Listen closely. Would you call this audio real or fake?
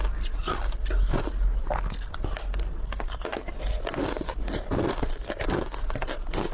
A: real